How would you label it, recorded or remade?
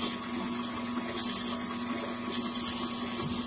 recorded